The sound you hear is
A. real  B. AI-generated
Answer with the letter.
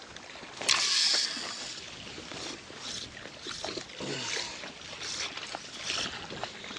A